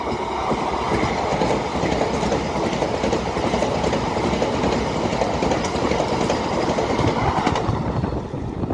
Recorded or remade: recorded